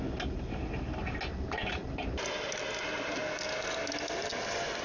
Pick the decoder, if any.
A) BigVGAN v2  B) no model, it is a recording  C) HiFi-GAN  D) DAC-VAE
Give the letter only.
B